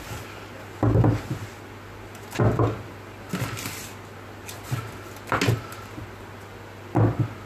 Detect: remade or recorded recorded